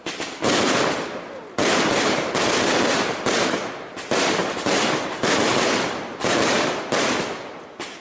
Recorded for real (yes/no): no